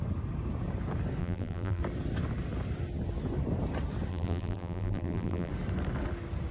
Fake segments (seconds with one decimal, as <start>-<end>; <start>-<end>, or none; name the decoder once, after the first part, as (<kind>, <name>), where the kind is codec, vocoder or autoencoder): 1.2-1.8 (vocoder, BigVGAN v2); 4.1-5.5